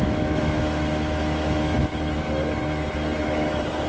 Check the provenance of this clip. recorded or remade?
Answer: remade